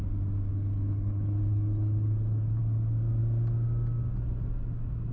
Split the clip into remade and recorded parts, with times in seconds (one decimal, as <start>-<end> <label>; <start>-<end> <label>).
0.0-0.5 recorded; 0.5-2.6 remade; 2.6-5.1 recorded